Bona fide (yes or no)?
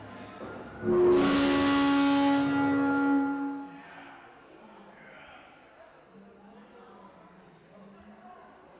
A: yes